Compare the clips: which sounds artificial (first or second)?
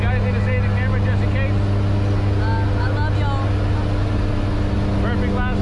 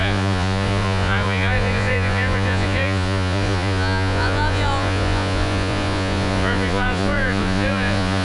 second